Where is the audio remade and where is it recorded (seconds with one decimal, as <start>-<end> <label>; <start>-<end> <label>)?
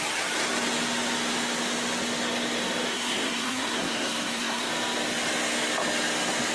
0.0-2.9 recorded; 2.9-4.7 remade; 4.7-6.5 recorded